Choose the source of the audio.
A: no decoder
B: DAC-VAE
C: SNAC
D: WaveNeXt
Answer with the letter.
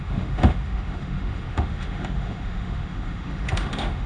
B